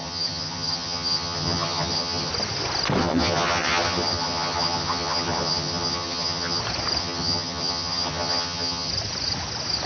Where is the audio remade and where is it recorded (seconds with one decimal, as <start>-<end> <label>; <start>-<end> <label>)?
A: 0.0-2.3 remade; 2.3-3.0 recorded; 3.0-6.6 remade; 6.6-7.0 recorded; 7.0-8.9 remade; 8.9-9.9 recorded